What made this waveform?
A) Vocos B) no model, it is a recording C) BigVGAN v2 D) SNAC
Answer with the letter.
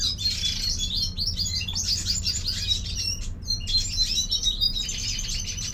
B